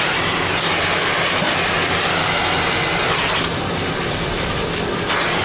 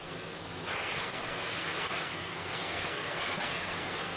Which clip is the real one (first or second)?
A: first